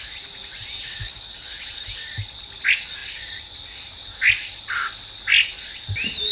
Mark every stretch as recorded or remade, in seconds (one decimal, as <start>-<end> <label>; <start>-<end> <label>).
0.0-1.0 recorded; 1.0-1.5 remade; 1.5-6.3 recorded